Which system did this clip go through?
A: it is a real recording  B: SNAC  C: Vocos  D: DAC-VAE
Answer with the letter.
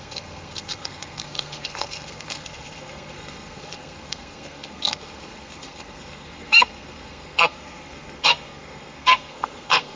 B